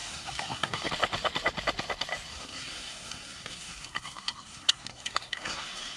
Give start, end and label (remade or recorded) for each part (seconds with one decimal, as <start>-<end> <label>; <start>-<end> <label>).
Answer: 0.0-0.9 remade; 0.9-2.3 recorded; 2.3-6.0 remade